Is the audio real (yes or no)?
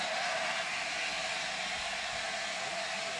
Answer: yes